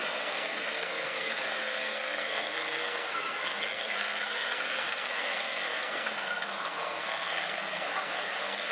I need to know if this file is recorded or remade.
remade